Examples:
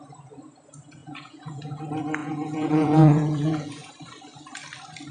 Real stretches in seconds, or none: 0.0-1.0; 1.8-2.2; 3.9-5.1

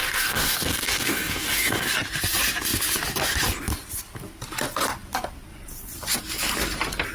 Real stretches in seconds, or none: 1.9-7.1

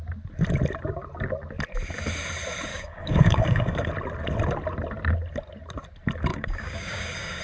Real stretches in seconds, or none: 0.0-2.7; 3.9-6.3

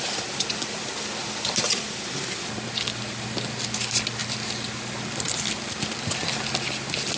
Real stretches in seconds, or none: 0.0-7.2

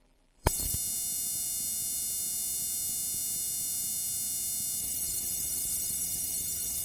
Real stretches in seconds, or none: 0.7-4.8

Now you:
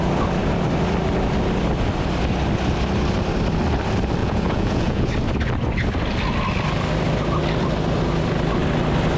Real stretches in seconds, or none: 0.0-4.2; 5.1-9.2